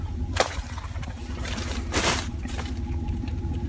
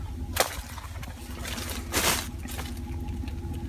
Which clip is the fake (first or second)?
first